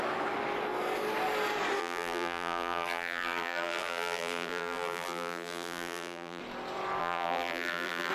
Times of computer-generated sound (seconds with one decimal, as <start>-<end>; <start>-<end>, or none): 1.8-6.4; 7.0-8.1